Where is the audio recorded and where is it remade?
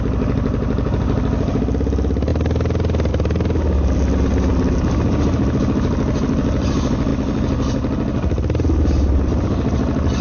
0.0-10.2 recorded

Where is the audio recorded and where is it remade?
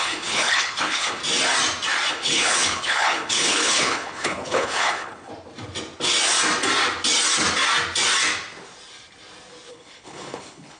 0.0-1.2 remade; 1.2-2.1 recorded; 2.1-5.3 remade; 5.3-9.7 recorded; 9.7-10.8 remade